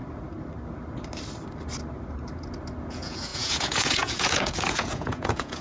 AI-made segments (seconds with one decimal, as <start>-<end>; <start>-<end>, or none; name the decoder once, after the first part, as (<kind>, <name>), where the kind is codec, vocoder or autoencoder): 2.8-5.6 (vocoder, Vocos)